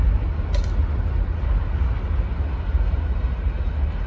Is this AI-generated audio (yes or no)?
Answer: no